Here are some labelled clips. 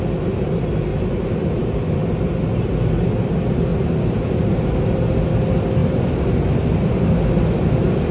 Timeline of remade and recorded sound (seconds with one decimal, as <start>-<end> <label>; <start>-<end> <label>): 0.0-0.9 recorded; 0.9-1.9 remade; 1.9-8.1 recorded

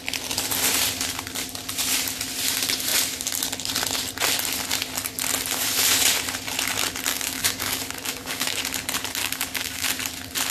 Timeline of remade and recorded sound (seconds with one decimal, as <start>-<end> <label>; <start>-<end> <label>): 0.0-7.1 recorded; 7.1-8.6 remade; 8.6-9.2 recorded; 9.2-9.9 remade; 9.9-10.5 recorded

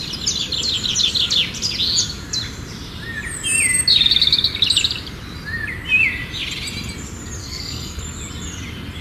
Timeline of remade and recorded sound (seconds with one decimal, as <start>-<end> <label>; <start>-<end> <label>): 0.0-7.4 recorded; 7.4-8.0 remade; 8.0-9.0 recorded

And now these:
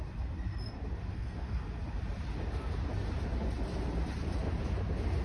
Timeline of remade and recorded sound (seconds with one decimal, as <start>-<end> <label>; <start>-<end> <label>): 0.0-1.1 recorded; 1.1-1.6 remade; 1.6-5.2 recorded

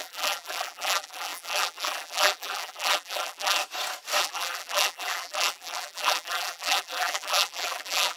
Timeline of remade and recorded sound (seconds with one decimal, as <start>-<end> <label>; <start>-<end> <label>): 0.0-3.6 remade; 3.6-4.2 recorded; 4.2-8.2 remade

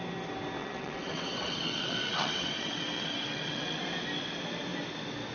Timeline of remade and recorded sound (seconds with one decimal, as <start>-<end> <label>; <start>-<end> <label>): 0.0-0.6 recorded; 0.6-3.8 remade; 3.8-5.3 recorded